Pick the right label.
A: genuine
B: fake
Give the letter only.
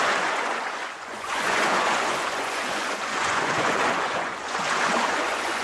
B